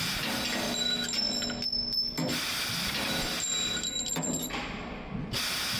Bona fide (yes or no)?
yes